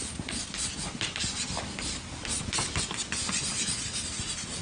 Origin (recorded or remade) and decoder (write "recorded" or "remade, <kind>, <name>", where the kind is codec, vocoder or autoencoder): recorded